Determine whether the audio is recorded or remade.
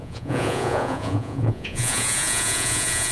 remade